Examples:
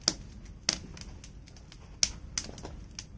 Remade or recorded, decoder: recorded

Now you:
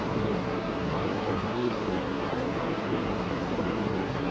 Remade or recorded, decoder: remade, codec, SNAC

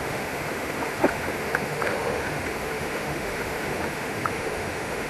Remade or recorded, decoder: remade, autoencoder, DAC-VAE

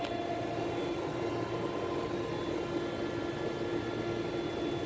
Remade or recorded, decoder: recorded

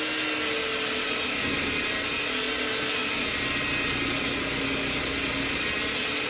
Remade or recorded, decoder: recorded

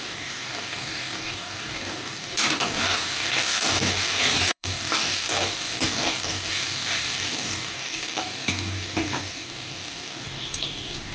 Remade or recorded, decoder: remade, codec, DAC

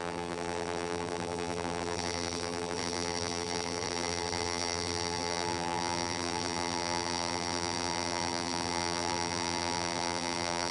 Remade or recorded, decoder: remade, vocoder, BigVGAN v2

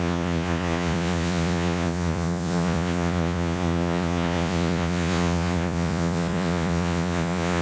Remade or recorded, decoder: remade, vocoder, Vocos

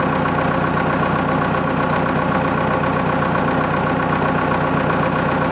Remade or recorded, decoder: recorded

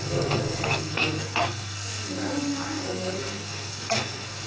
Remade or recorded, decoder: remade, codec, SNAC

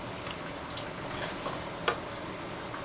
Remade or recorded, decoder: recorded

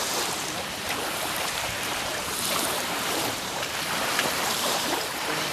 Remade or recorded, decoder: remade, vocoder, BigVGAN v2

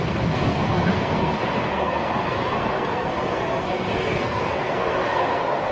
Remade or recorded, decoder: remade, codec, SNAC